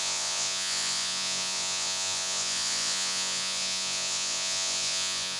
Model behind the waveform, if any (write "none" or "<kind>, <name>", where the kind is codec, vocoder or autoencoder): vocoder, Vocos